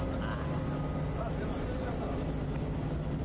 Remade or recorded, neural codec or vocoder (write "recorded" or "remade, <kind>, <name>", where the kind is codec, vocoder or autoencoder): recorded